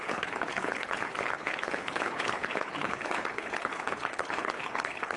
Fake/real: fake